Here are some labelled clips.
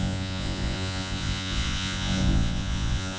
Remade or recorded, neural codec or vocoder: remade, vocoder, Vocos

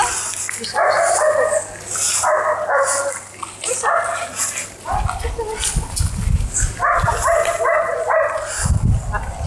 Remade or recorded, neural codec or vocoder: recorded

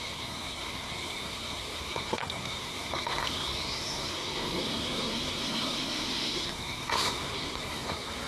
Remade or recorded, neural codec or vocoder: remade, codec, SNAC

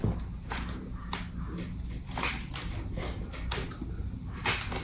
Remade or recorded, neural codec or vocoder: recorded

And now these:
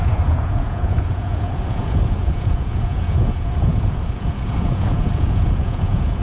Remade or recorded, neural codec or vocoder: remade, vocoder, Vocos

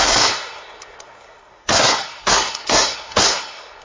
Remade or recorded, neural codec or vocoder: remade, codec, SNAC